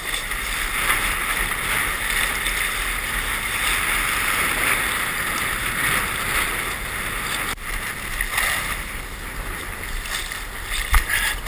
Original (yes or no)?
yes